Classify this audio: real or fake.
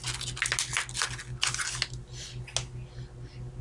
real